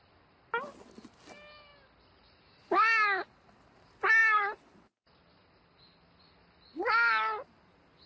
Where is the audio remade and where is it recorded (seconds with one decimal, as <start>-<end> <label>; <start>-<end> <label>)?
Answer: 0.0-8.1 recorded